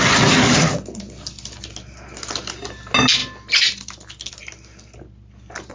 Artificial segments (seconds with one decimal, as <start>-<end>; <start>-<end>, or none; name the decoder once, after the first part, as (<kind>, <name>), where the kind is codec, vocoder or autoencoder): none